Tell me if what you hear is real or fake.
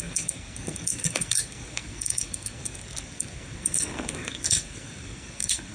fake